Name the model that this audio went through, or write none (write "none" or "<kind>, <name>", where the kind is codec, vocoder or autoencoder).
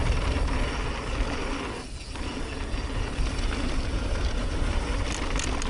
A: none